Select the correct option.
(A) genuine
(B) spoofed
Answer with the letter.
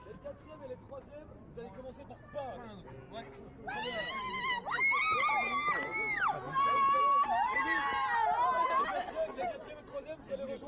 A